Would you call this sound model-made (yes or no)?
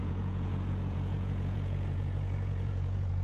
yes